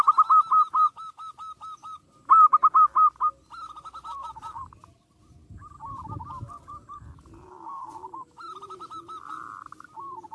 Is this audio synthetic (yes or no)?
no